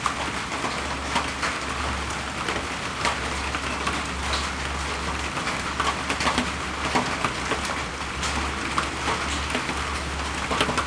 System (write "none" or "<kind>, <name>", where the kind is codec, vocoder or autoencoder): none